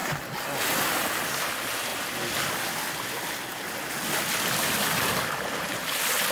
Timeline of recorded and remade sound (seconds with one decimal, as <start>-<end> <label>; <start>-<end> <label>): 0.0-6.3 recorded